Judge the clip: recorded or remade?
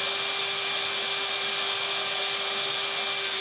recorded